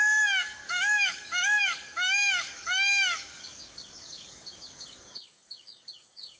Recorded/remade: remade